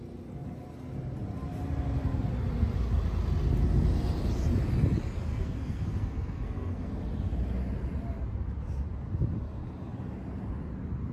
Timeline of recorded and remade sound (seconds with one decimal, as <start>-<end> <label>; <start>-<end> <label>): 0.0-5.3 recorded; 5.3-6.9 remade; 6.9-11.1 recorded